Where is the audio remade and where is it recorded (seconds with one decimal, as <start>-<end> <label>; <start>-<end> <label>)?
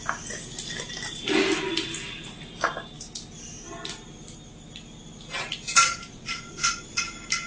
0.0-5.9 recorded; 5.9-7.0 remade; 7.0-7.5 recorded